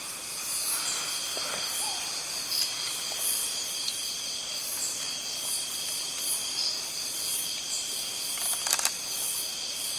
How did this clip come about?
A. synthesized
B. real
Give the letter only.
B